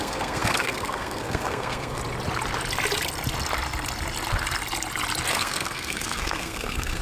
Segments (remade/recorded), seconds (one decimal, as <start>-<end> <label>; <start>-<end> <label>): 0.0-2.0 remade; 2.0-5.3 recorded; 5.3-7.0 remade